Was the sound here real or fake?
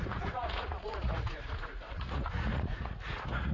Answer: fake